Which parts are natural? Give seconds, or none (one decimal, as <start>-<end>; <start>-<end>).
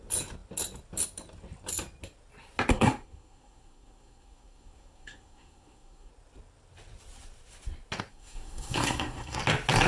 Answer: 0.0-2.7; 6.1-8.1; 9.4-9.9